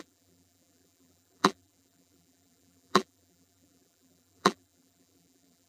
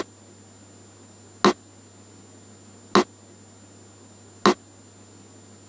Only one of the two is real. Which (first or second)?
second